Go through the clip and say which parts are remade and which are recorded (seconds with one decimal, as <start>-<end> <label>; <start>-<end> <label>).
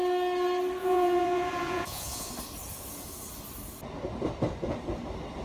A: 0.0-0.8 recorded; 0.8-2.3 remade; 2.3-5.4 recorded